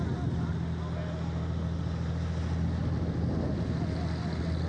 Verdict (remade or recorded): recorded